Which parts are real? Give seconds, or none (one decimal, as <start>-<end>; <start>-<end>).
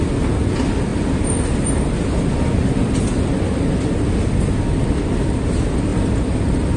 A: 0.0-6.8